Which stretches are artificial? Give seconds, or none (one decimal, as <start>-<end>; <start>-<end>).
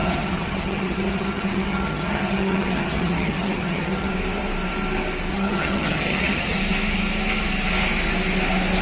0.0-4.1; 5.3-6.6